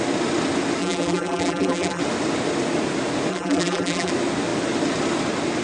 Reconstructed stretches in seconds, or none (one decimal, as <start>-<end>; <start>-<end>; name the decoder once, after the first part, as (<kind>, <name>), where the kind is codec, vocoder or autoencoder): 0.8-2.0 (vocoder, BigVGAN v2); 3.3-4.1